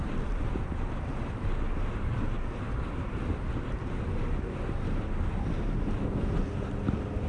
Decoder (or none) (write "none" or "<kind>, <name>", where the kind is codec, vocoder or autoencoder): none